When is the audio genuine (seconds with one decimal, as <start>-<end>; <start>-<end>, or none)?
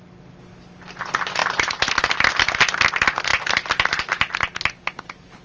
0.0-5.4